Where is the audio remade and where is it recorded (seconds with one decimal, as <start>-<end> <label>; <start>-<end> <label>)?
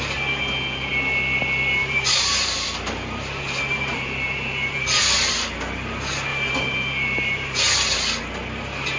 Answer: 0.0-1.8 recorded; 1.8-5.0 remade; 5.0-6.3 recorded; 6.3-7.6 remade; 7.6-9.0 recorded